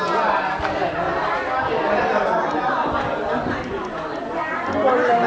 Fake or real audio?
real